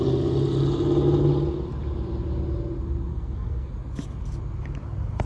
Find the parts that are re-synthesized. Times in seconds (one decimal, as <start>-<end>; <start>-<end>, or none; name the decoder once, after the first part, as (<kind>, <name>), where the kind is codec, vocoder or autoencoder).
3.1-3.7 (codec, SNAC)

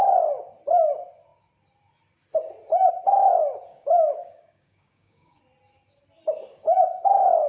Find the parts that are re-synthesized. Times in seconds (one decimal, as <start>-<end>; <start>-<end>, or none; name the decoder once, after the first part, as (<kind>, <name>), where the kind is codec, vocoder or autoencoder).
3.7-5.4 (codec, DAC); 6.5-7.1

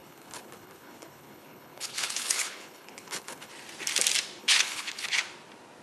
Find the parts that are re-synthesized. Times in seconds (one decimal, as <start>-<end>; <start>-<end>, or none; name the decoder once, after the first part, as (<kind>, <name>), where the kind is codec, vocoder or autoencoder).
0.0-3.5 (codec, HILCodec); 4.4-5.2

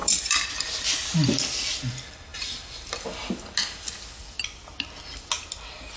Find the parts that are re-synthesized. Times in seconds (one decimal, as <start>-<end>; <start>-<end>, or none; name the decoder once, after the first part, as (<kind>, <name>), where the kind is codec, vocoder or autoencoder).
0.0-1.6 (vocoder, BigVGAN v2)

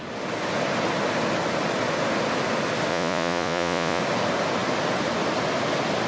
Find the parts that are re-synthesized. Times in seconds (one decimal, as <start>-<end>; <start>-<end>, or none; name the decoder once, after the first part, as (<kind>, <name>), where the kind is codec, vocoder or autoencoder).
2.9-4.0 (vocoder, Vocos)

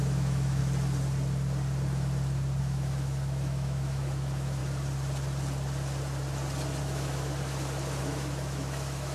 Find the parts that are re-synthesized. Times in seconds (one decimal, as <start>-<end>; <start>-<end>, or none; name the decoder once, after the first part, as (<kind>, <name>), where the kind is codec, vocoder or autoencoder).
0.0-0.6 (autoencoder, DAC-VAE); 2.6-4.6; 6.8-7.3; 8.0-9.1

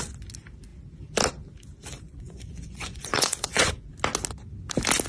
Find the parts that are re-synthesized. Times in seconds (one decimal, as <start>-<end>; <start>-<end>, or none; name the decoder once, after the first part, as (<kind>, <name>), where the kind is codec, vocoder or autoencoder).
1.9-3.9 (vocoder, Vocos)

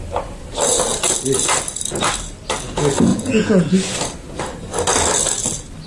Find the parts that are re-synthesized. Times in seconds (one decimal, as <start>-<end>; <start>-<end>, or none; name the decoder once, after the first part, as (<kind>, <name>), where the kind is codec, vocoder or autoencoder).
3.1-3.7 (vocoder, Vocos)